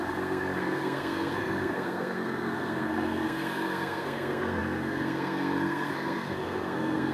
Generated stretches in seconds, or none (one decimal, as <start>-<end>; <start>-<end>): 0.0-7.1